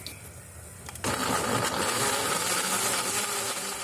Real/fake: real